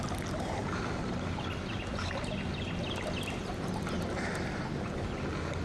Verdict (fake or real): real